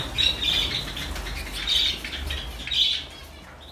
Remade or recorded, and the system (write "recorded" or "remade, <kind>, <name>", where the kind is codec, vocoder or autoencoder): recorded